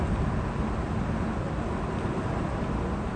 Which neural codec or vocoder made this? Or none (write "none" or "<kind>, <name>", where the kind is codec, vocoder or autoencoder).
none